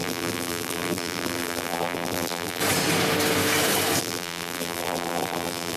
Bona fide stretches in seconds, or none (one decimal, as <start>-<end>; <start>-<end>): 2.6-4.0